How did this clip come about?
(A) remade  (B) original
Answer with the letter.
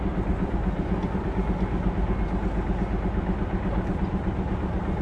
B